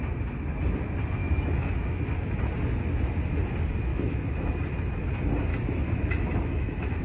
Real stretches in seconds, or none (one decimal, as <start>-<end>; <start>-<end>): 0.0-1.2; 2.5-3.9; 4.6-5.5